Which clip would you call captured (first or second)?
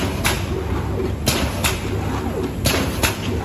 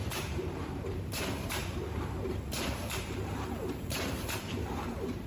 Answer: first